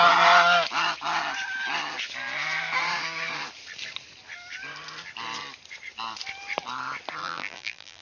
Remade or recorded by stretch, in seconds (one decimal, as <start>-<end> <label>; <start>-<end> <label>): 0.0-7.2 recorded; 7.2-8.0 remade

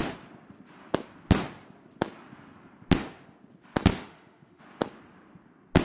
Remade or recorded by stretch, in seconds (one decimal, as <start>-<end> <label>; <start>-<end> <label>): 0.0-3.9 recorded; 3.9-4.6 remade; 4.6-5.8 recorded